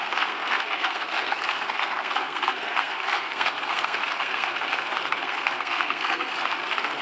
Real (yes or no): no